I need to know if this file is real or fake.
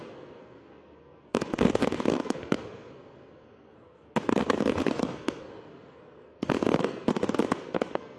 fake